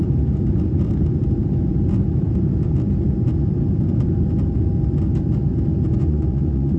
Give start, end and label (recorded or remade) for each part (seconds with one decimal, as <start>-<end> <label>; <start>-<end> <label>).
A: 0.0-5.9 recorded; 5.9-6.8 remade